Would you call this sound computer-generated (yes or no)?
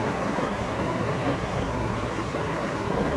yes